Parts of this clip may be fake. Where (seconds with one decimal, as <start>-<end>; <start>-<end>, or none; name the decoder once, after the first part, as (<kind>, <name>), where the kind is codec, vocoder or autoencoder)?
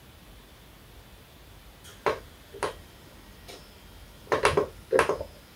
1.9-2.9 (vocoder, BigVGAN v2)